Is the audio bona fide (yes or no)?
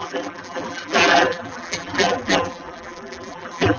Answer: no